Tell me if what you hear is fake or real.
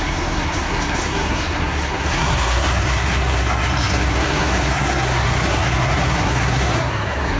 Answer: fake